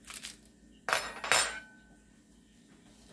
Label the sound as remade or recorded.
recorded